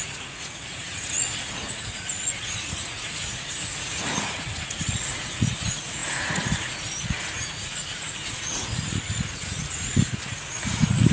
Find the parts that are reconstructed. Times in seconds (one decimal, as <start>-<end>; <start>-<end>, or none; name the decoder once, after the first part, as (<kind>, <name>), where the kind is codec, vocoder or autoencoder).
0.0-11.1 (vocoder, Vocos)